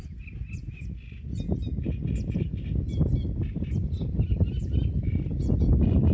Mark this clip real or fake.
real